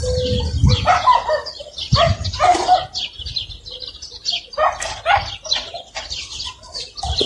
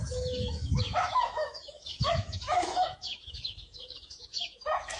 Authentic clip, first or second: first